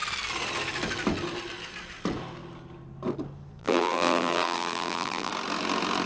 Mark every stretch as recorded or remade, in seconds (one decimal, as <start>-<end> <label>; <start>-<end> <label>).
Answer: 0.0-3.6 recorded; 3.6-5.3 remade; 5.3-6.1 recorded